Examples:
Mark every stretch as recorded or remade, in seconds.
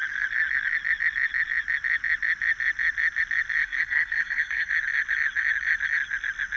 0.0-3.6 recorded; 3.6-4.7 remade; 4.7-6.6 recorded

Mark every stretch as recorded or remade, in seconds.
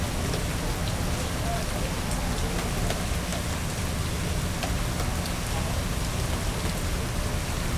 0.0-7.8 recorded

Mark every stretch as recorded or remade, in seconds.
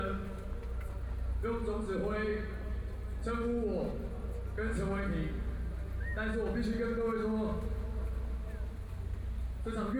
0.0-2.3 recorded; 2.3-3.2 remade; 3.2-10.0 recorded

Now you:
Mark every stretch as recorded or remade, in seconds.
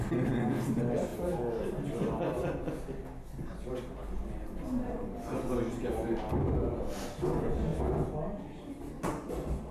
0.0-9.7 recorded